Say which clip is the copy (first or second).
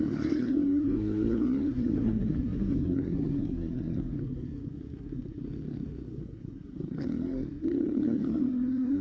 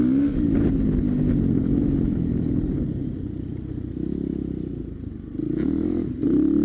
first